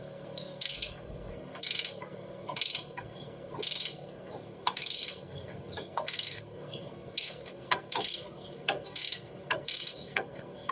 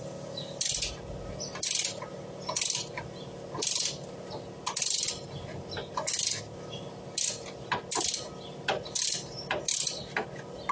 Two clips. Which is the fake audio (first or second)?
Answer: first